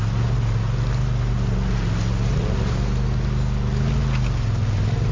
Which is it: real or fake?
real